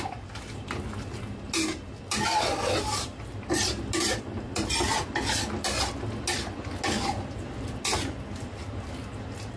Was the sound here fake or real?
real